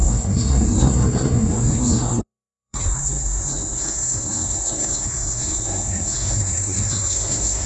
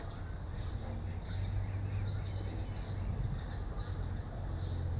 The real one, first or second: second